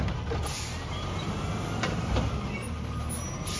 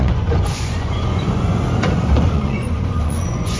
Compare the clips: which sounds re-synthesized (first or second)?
second